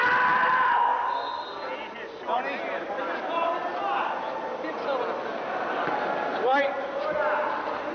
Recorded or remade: recorded